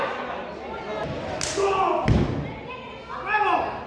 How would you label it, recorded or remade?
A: recorded